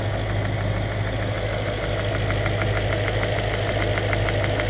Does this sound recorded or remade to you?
recorded